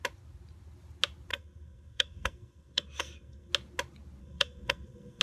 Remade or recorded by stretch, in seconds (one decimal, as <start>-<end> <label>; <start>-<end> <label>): 0.0-1.3 recorded; 1.3-3.5 remade; 3.5-4.2 recorded; 4.2-5.2 remade